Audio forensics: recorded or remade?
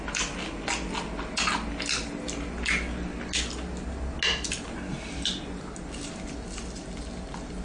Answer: recorded